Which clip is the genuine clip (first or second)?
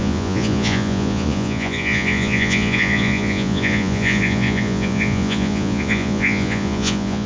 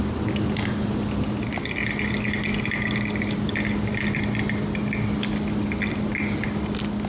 second